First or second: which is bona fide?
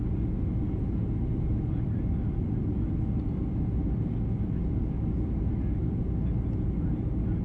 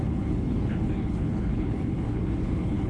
first